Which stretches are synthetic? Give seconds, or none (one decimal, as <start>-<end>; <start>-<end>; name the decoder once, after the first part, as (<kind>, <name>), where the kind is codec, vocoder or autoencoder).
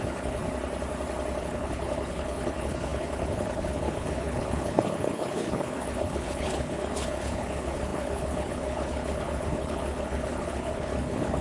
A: 0.0-0.4 (codec, HILCodec); 1.4-11.4